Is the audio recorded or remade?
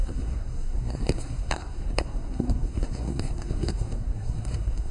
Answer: remade